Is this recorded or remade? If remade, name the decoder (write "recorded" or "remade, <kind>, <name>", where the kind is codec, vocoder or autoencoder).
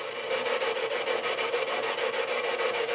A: recorded